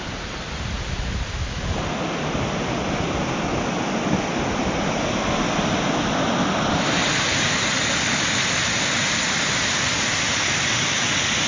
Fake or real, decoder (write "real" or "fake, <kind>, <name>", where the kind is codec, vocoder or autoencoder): real